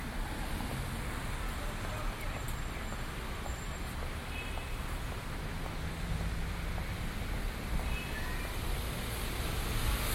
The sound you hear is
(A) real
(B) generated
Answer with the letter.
A